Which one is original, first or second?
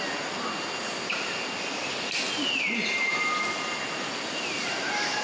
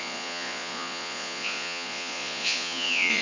first